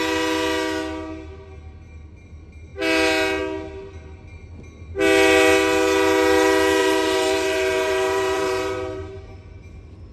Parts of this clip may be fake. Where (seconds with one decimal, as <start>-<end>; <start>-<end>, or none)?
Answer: 6.8-9.7